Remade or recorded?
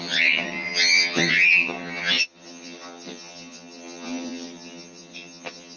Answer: remade